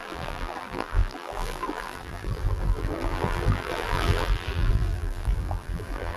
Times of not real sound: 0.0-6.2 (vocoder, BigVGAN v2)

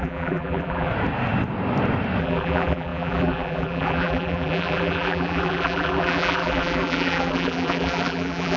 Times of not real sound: 0.0-0.9 (vocoder, BigVGAN v2); 2.2-8.6

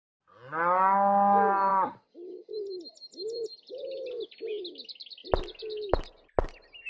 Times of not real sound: 1.7-2.8 (vocoder, BigVGAN v2)

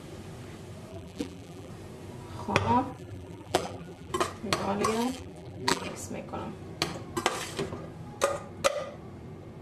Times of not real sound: 0.9-1.7 (vocoder, BigVGAN v2); 2.9-4.1; 5.0-5.9

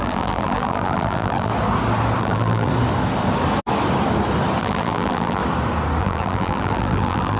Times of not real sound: 0.0-1.5 (vocoder, BigVGAN v2); 2.2-2.7; 4.6-5.4; 6.0-7.4

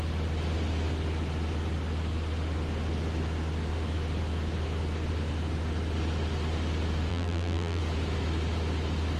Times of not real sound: 7.1-7.8 (vocoder, BigVGAN v2)

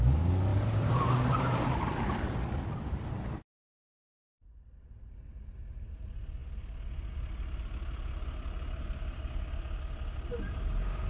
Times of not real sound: 0.5-2.1 (vocoder, BigVGAN v2)